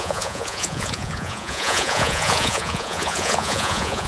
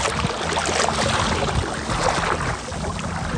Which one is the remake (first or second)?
first